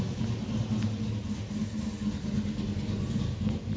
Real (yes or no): yes